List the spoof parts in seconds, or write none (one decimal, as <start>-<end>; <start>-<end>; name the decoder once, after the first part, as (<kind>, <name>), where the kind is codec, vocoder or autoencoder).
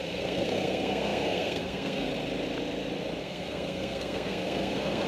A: 0.0-2.1 (codec, SNAC); 3.2-5.1